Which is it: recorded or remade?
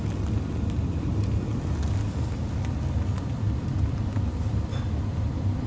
recorded